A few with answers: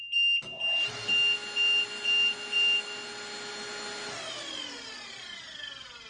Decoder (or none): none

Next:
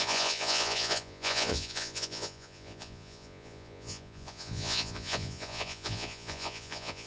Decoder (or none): vocoder, Vocos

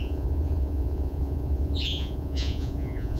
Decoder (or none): vocoder, Vocos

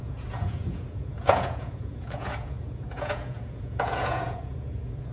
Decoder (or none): vocoder, Vocos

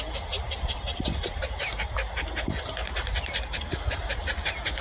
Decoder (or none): none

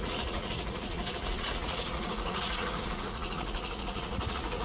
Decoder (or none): vocoder, Vocos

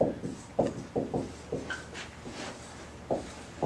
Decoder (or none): none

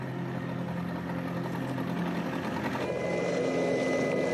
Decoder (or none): none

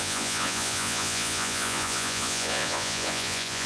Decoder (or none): vocoder, Vocos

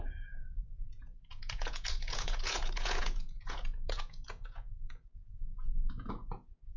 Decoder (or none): vocoder, Vocos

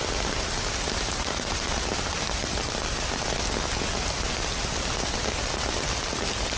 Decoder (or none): none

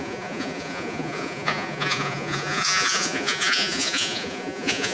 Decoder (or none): vocoder, Vocos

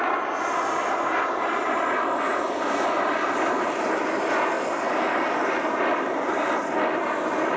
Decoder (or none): none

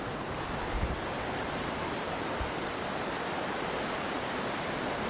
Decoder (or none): none